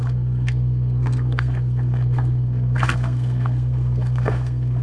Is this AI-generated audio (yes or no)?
yes